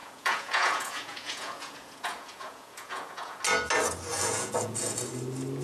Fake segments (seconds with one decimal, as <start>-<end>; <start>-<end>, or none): 0.0-3.4; 4.1-5.0